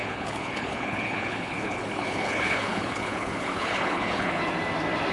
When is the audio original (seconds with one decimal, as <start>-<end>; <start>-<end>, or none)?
4.4-5.1